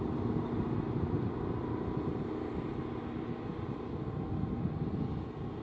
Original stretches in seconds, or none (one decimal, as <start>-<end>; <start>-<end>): 0.0-1.6; 2.3-5.6